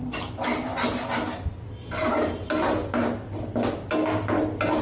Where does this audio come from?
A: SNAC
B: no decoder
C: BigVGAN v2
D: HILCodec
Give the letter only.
B